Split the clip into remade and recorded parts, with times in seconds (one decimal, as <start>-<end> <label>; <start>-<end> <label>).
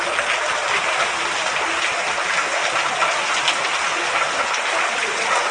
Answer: 0.0-5.5 recorded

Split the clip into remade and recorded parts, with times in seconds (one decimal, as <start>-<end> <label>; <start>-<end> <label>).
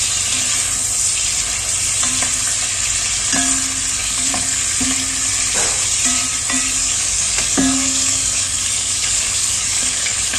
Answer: 0.0-4.0 recorded; 4.0-4.6 remade; 4.6-6.8 recorded; 6.8-10.4 remade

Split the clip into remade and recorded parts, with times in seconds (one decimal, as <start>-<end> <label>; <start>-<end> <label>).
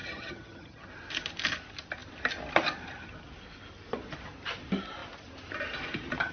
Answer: 0.0-0.9 remade; 0.9-6.3 recorded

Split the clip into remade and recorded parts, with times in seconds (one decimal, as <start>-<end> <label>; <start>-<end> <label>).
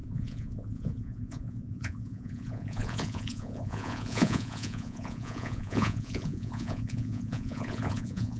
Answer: 0.0-8.4 remade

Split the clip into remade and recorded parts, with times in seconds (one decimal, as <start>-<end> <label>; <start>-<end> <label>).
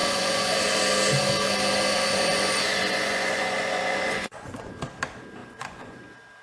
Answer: 0.0-0.8 remade; 0.8-1.9 recorded; 1.9-4.7 remade; 4.7-5.4 recorded; 5.4-6.0 remade; 6.0-6.4 recorded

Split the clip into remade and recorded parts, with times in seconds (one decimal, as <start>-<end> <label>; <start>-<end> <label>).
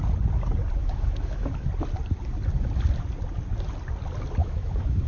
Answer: 0.0-0.8 recorded; 0.8-1.7 remade; 1.7-4.4 recorded; 4.4-5.1 remade